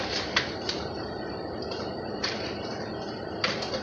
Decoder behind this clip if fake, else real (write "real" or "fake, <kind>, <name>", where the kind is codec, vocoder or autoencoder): fake, vocoder, BigVGAN v2